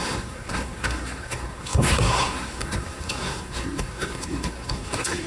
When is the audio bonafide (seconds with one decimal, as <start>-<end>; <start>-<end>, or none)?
none